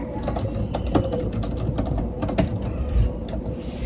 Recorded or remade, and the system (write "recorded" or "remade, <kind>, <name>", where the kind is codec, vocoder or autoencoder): recorded